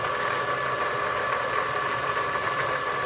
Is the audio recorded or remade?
recorded